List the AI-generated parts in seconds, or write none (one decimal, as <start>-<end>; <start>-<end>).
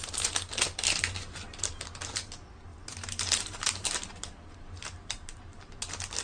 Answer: 2.7-5.6